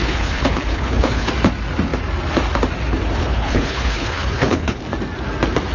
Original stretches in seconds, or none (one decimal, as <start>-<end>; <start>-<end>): 1.3-3.2; 4.8-5.7